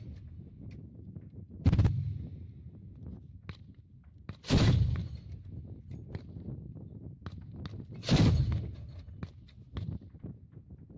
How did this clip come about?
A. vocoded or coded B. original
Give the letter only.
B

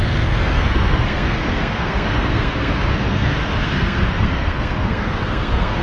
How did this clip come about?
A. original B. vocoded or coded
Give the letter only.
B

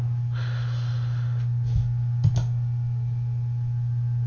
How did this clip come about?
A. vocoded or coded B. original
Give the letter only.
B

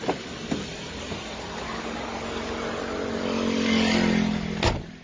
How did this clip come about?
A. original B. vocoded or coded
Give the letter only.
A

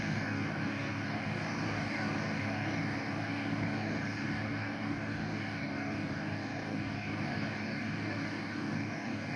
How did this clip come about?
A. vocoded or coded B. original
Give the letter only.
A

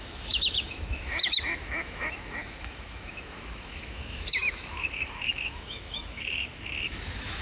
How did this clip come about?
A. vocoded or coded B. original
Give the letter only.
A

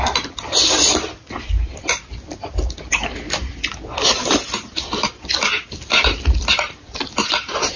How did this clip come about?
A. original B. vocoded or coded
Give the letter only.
A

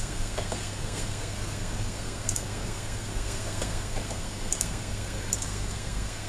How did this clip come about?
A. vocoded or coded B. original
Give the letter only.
A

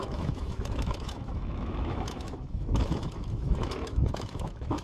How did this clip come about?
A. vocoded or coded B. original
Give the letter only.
A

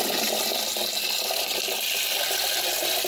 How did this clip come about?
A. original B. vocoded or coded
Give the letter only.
A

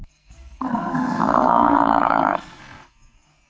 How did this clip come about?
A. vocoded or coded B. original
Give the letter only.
A